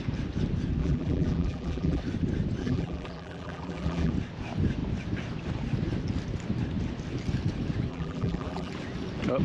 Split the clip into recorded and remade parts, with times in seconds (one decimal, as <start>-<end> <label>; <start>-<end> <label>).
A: 0.0-0.8 recorded; 0.8-2.0 remade; 2.0-2.6 recorded; 2.6-4.1 remade; 4.1-7.9 recorded; 7.9-8.7 remade; 8.7-9.4 recorded